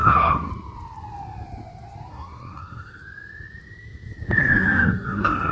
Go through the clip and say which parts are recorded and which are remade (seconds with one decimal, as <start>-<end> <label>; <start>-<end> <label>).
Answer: 0.0-0.5 remade; 0.5-2.1 recorded; 2.1-3.0 remade; 3.0-4.4 recorded; 4.4-5.5 remade